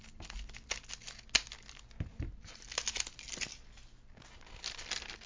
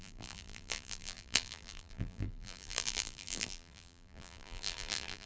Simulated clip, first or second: second